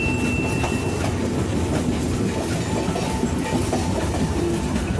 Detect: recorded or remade recorded